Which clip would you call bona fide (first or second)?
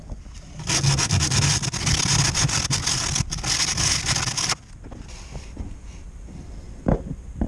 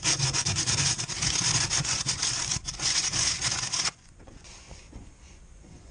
first